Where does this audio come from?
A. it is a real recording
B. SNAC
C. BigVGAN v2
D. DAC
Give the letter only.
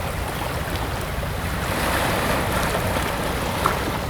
A